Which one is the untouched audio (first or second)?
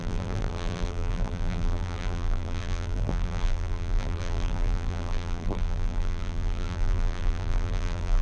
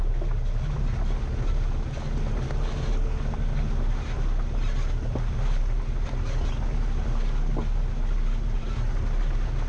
second